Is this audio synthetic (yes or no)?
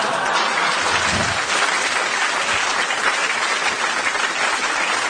no